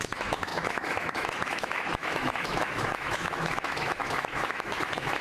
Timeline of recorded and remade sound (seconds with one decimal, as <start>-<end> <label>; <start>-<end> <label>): 0.0-5.2 remade